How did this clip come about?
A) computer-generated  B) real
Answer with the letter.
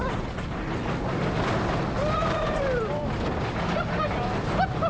B